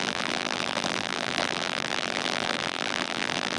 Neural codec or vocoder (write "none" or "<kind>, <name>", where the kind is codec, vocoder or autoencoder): vocoder, BigVGAN v2